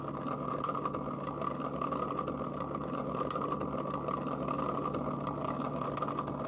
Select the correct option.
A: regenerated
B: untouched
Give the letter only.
B